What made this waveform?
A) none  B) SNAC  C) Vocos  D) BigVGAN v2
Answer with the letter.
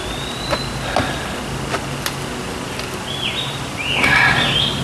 A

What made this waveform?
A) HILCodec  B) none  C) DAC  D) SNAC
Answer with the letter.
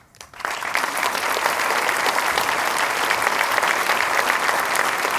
B